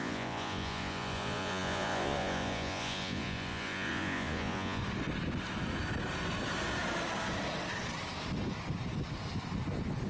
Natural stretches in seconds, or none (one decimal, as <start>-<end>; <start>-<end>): 4.8-10.1